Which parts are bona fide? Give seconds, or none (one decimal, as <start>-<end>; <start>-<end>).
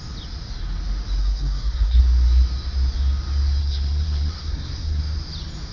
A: 0.0-1.2; 2.0-3.6; 5.0-5.7